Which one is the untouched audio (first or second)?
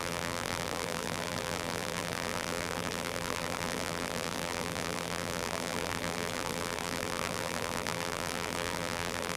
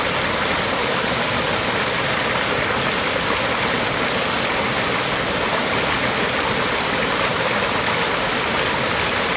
second